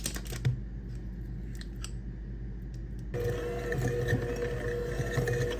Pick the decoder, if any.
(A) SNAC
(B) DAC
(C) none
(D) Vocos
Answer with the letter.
C